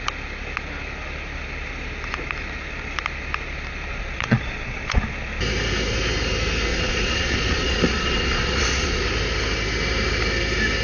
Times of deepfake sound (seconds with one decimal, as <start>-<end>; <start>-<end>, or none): 3.9-5.0; 6.7-9.0